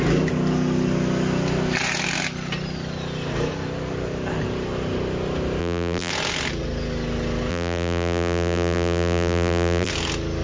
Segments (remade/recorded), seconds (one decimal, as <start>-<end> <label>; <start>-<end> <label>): 0.0-5.6 recorded; 5.6-6.1 remade; 6.1-7.5 recorded; 7.5-9.9 remade; 9.9-10.4 recorded